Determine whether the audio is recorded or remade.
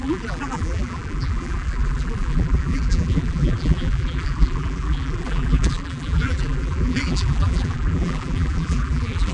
remade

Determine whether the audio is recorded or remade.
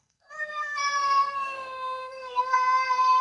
remade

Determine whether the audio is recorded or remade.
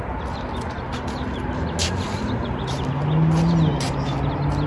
recorded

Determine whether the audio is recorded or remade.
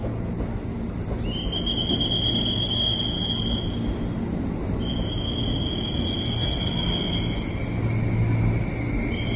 recorded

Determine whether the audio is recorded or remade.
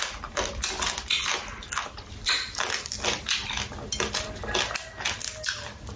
recorded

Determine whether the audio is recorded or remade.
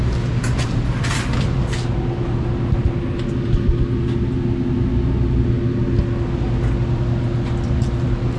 recorded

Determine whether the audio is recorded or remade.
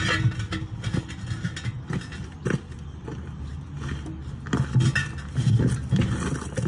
recorded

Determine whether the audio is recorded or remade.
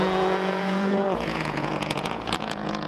remade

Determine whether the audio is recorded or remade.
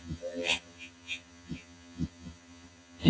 remade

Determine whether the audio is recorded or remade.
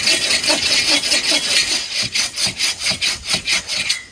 remade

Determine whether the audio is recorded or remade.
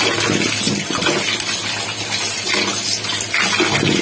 recorded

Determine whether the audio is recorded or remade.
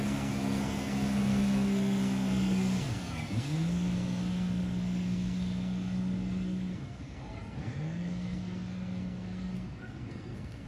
remade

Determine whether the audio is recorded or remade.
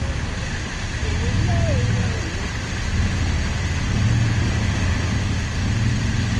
recorded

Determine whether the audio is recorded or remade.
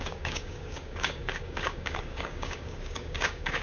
remade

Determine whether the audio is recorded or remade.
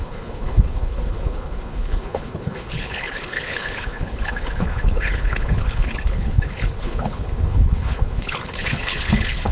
remade